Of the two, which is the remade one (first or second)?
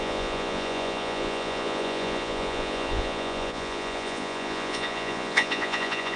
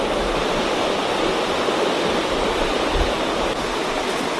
first